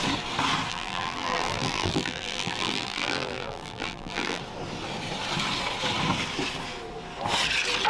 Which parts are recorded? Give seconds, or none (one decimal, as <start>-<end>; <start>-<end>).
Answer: 0.0-0.7; 4.4-7.9